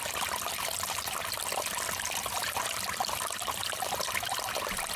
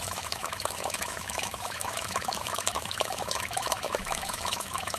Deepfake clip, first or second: second